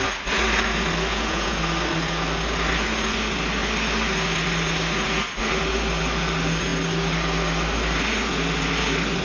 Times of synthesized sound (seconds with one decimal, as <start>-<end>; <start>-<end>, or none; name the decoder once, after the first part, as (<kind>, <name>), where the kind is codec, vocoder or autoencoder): 1.1-1.6 (vocoder, Vocos)